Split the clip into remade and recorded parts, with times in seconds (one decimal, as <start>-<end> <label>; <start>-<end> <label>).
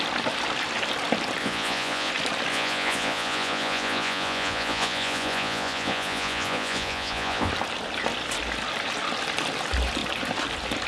0.0-1.4 recorded; 1.4-2.1 remade; 2.1-2.5 recorded; 2.5-7.5 remade; 7.5-10.9 recorded